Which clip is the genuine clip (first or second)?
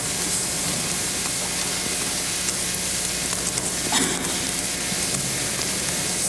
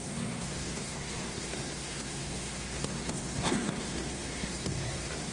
first